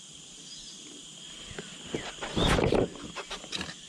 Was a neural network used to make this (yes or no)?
no